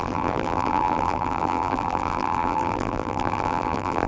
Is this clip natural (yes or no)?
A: no